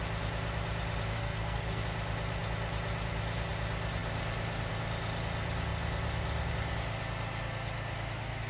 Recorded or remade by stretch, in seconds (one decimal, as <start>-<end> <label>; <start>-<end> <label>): 0.0-1.1 recorded; 1.1-1.8 remade; 1.8-8.5 recorded